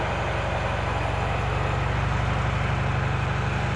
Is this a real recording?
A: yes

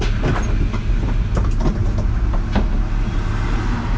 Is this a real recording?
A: yes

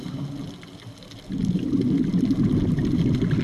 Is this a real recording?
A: yes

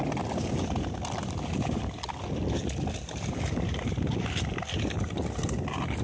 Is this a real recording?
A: yes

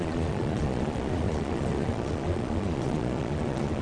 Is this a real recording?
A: no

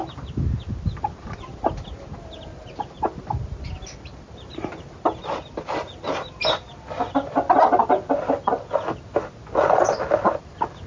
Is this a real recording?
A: yes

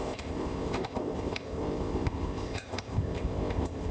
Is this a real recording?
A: no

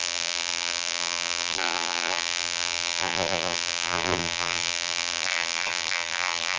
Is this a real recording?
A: no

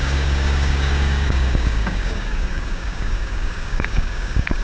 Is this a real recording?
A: no